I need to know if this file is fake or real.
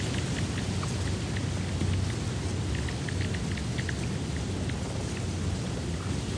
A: real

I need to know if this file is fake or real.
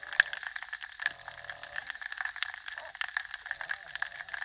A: real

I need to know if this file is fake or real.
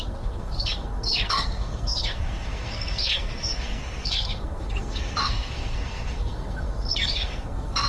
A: fake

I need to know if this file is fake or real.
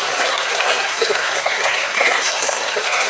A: fake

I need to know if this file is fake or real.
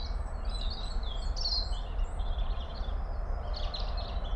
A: real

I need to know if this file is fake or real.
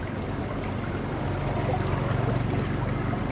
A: real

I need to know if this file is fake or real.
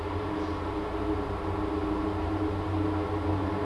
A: real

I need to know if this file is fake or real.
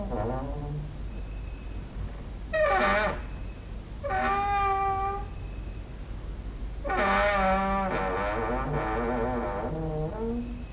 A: real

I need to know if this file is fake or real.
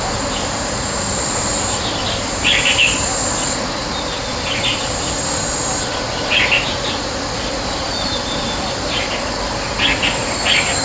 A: real